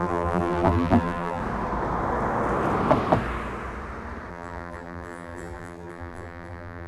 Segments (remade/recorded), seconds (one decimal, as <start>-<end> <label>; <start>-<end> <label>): 0.0-1.4 remade; 1.4-4.3 recorded; 4.3-6.9 remade